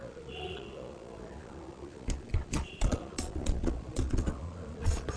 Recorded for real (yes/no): no